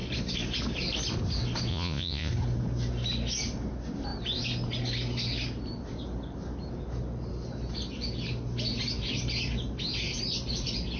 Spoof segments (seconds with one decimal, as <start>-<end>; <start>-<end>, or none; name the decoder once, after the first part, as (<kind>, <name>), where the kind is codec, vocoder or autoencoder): 1.7-2.3 (vocoder, Vocos)